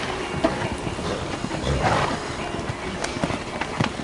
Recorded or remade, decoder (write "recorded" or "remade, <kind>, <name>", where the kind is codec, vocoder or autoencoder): recorded